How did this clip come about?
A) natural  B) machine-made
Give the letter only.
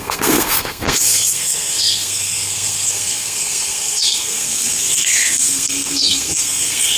B